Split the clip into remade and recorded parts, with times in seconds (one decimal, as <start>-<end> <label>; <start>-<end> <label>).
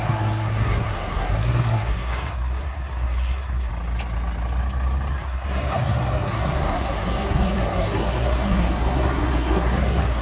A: 0.0-3.7 remade; 3.7-5.1 recorded; 5.1-10.2 remade